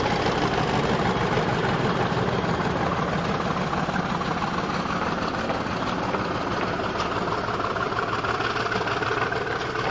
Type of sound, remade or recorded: recorded